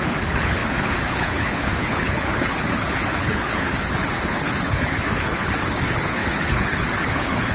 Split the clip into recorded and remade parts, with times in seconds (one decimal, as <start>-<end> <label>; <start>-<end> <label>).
0.0-7.5 remade